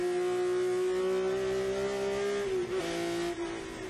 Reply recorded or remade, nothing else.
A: recorded